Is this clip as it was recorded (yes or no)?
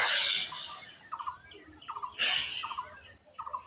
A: yes